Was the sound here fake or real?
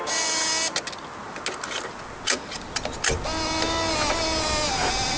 real